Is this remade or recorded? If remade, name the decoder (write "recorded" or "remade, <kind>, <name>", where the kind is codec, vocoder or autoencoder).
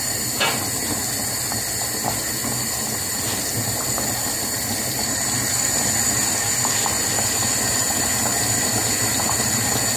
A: recorded